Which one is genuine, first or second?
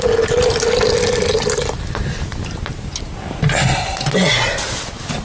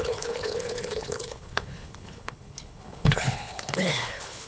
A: first